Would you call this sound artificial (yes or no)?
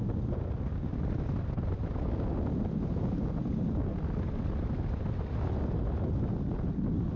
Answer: no